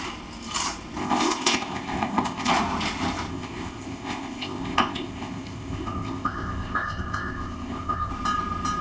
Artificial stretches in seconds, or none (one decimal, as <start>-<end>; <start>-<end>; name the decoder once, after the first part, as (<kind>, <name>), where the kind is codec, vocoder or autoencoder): 1.0-2.5 (codec, ZipCodec); 3.3-8.1